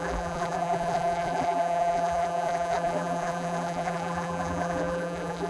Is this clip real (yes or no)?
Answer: no